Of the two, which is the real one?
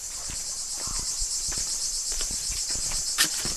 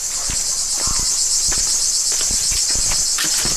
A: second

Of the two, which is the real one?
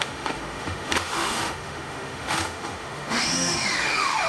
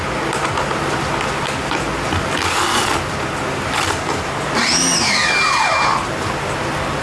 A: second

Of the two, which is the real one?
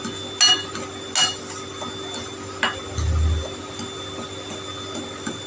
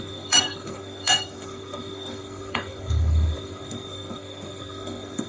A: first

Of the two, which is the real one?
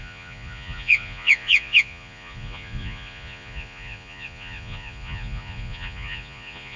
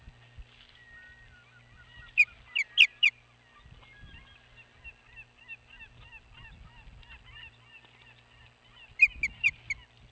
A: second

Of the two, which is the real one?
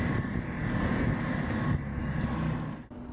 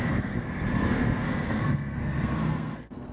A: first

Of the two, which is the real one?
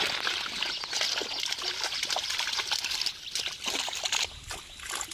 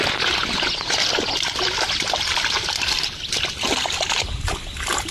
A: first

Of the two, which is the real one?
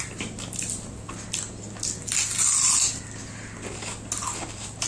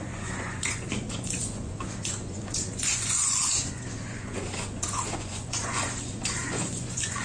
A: first